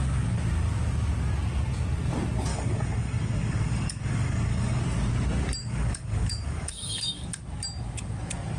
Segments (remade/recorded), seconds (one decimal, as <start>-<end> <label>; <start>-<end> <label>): 0.0-2.5 recorded; 2.5-4.8 remade; 4.8-5.6 recorded; 5.6-7.3 remade; 7.3-8.6 recorded